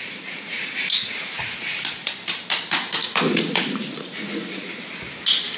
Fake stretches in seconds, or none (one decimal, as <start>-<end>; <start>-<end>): 0.0-1.4; 3.0-4.8